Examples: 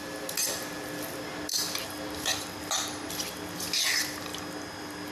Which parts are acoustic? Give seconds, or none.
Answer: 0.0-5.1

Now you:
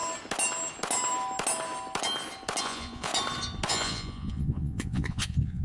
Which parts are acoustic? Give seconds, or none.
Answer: 0.0-2.6; 3.1-3.7